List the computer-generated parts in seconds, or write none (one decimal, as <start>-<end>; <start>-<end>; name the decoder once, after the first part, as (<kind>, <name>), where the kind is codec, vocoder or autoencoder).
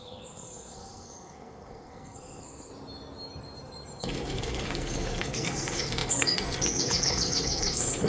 0.0-2.7 (codec, SNAC); 4.0-8.1